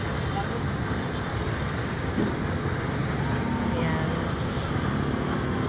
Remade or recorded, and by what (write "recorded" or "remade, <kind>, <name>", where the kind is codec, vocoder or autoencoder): recorded